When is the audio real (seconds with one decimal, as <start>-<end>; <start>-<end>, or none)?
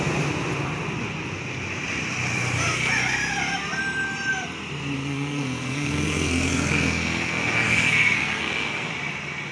0.0-5.0; 8.9-9.5